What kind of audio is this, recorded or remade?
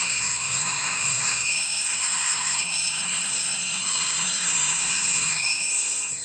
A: remade